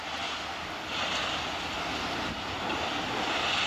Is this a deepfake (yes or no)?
no